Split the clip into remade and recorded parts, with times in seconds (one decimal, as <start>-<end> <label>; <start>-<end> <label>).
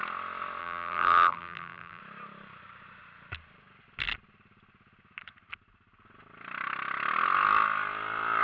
0.0-0.6 recorded; 0.6-2.0 remade; 2.0-8.4 recorded